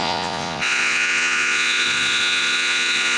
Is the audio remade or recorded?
remade